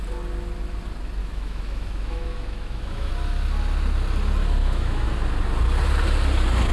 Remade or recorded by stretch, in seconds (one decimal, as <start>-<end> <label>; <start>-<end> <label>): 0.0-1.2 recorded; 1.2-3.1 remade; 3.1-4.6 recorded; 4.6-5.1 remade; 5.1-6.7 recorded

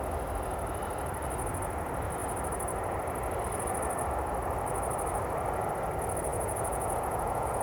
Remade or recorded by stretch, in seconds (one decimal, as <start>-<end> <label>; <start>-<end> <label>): 0.0-6.3 recorded; 6.3-7.6 remade

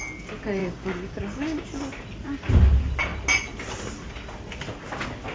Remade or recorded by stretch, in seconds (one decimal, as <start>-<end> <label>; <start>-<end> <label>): 0.0-0.6 recorded; 0.6-1.7 remade; 1.7-5.3 recorded

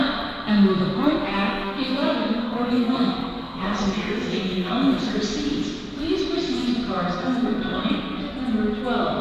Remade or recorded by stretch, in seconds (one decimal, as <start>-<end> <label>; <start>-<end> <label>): 0.0-1.5 recorded; 1.5-5.1 remade; 5.1-7.2 recorded; 7.2-8.2 remade; 8.2-9.2 recorded